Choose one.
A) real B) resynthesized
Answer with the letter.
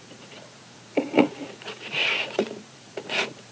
B